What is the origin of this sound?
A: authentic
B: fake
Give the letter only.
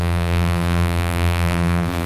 B